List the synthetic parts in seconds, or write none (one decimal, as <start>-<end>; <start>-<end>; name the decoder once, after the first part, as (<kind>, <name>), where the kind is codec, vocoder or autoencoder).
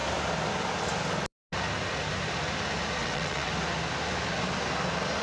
3.0-3.5 (vocoder, WaveNeXt)